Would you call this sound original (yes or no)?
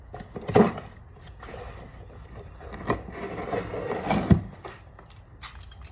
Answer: yes